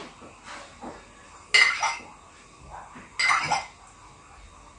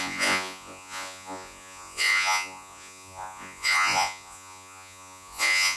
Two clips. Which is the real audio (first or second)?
first